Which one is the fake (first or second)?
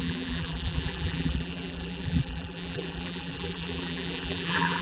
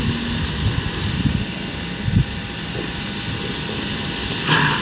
first